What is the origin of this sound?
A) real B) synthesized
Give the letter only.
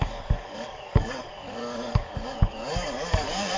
B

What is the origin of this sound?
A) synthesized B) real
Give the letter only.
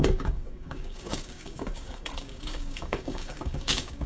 A